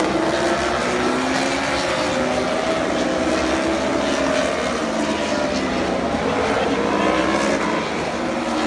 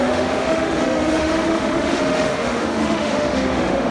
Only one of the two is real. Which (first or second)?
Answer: first